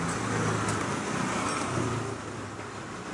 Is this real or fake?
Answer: real